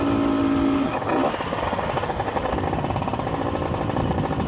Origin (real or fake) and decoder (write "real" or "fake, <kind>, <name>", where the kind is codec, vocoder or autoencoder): real